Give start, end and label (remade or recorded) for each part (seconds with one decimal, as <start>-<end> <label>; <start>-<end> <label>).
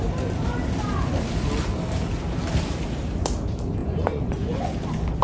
0.0-3.8 recorded; 3.8-4.6 remade; 4.6-5.2 recorded